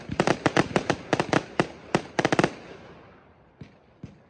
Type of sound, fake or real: real